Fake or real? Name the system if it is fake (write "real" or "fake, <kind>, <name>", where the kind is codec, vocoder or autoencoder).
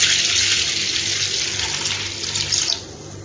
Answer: real